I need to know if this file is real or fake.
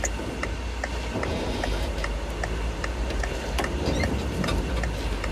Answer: real